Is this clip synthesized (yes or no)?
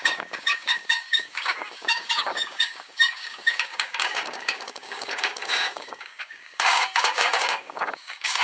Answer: yes